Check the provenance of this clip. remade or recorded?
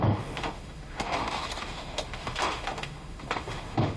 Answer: remade